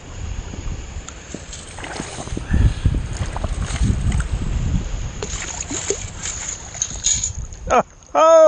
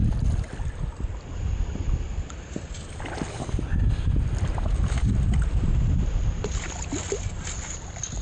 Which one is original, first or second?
second